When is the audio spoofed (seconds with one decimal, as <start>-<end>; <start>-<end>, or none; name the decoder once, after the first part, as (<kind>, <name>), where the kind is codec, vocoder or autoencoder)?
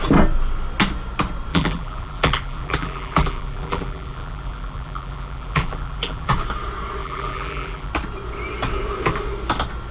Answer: 1.5-6.3 (vocoder, BigVGAN v2); 7.0-7.9